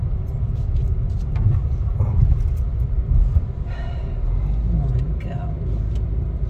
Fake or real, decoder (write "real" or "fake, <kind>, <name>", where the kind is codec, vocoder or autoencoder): real